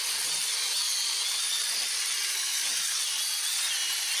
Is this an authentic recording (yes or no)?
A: yes